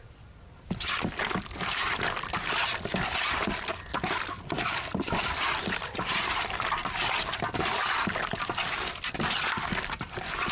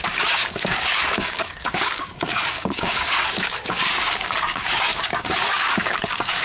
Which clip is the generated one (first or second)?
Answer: second